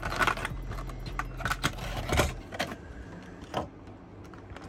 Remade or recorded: recorded